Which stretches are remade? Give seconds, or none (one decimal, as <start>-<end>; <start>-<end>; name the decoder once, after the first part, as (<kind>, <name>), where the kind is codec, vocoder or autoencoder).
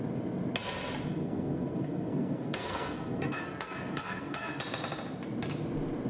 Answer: 1.1-4.6 (codec, SNAC)